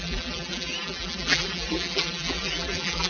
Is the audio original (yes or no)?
no